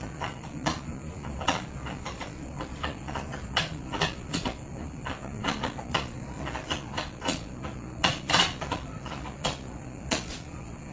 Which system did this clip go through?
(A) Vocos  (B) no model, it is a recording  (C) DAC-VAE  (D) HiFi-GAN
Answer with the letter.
A